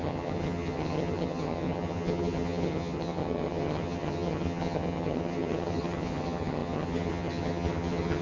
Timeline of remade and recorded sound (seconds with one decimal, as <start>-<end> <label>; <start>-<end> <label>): 0.0-8.2 remade